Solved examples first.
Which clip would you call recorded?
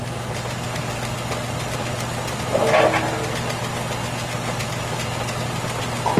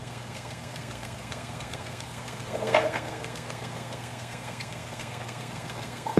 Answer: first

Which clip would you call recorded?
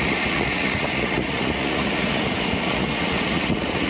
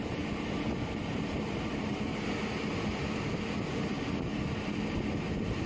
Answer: second